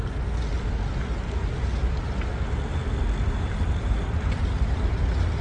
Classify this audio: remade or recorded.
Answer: recorded